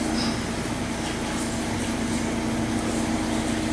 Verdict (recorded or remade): recorded